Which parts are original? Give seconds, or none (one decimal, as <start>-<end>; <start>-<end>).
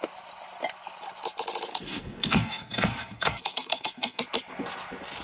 0.0-1.7; 4.2-5.2